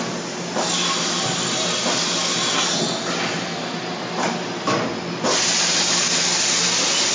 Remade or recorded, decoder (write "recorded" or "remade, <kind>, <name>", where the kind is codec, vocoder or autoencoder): recorded